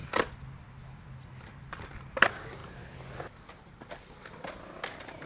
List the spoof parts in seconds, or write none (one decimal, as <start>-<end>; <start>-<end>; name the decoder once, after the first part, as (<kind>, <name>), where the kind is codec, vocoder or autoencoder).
none